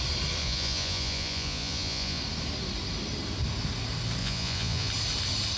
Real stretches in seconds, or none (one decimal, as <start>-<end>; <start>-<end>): 0.0-0.4; 2.2-4.2; 4.9-5.6